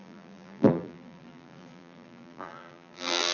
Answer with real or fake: fake